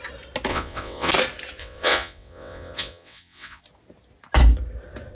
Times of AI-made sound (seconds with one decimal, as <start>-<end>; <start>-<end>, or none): 0.5-1.1; 1.6-3.6